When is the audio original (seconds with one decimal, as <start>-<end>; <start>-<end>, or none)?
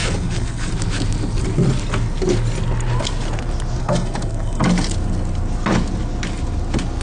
0.7-3.8; 4.6-7.0